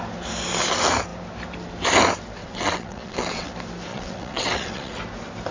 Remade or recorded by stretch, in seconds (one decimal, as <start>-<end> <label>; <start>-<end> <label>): 0.0-2.4 recorded; 2.4-3.5 remade; 3.5-3.9 recorded; 3.9-5.0 remade; 5.0-5.5 recorded